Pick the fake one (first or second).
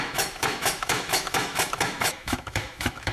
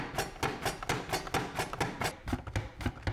first